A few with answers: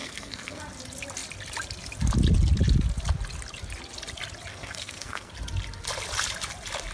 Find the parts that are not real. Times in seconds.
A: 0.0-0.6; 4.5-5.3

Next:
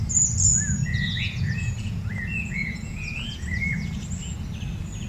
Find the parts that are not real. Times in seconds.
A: 0.5-3.4